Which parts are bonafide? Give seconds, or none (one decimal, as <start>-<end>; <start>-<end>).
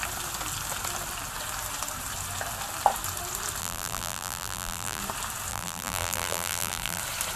0.0-3.6; 5.0-5.5; 7.0-7.4